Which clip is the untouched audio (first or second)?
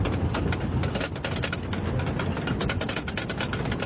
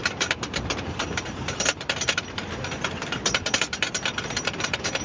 first